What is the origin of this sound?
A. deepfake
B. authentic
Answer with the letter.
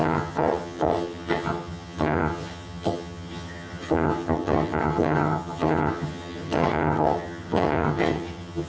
A